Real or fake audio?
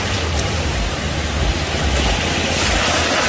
real